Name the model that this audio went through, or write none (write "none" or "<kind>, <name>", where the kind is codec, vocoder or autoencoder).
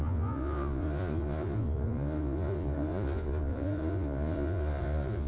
vocoder, Vocos